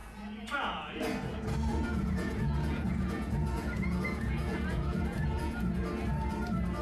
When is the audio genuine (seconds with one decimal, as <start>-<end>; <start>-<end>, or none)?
1.0-1.7; 5.8-6.8